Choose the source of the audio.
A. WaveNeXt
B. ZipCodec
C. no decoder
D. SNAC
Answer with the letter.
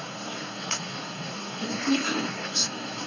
D